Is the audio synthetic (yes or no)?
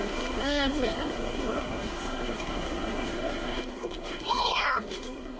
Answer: yes